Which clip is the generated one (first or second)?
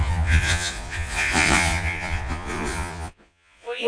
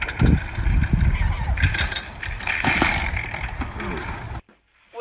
first